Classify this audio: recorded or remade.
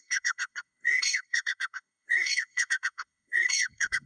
remade